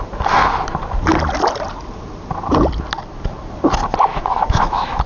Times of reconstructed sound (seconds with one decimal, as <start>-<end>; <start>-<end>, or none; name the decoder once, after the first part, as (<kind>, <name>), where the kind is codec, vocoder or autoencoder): 4.1-5.1 (autoencoder, DAC-VAE)